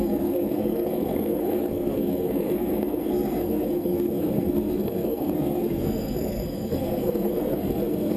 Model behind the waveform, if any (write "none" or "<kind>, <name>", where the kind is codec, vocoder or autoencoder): codec, SNAC